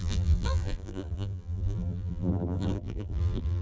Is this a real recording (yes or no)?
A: no